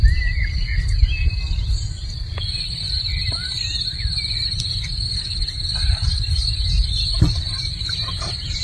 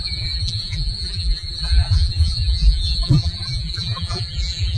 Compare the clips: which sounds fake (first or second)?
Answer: second